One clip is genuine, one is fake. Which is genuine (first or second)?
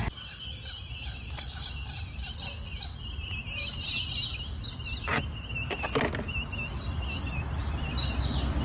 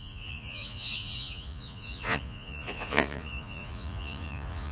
first